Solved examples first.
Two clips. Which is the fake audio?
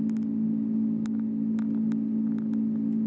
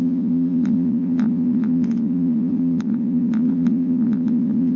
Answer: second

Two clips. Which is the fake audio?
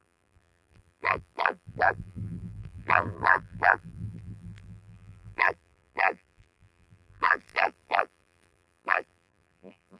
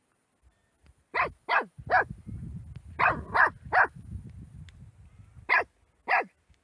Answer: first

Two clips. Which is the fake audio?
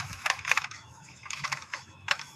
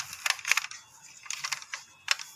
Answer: first